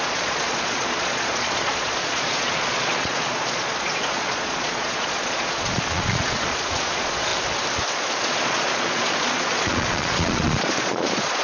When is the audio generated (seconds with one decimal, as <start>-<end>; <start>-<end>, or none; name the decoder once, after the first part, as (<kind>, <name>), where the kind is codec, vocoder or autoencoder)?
0.0-7.3 (vocoder, Vocos); 7.9-11.4